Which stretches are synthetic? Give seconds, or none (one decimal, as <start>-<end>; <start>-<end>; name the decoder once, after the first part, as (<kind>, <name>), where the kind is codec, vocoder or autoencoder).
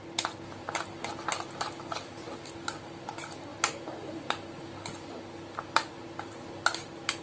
none